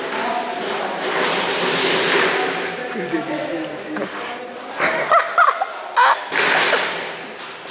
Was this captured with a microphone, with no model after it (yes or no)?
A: yes